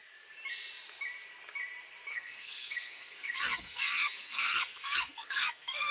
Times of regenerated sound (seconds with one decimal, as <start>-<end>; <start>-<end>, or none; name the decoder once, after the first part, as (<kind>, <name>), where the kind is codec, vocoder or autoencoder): 2.1-5.9 (codec, SNAC)